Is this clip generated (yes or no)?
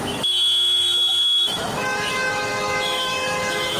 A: yes